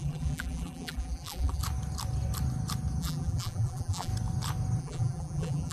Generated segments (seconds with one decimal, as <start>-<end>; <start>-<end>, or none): 0.0-1.6; 3.0-4.1; 4.8-5.7